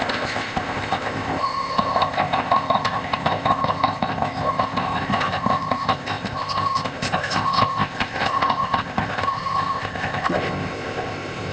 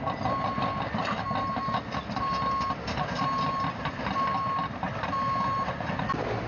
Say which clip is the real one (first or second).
second